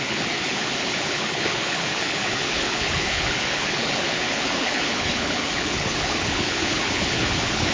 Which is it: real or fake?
fake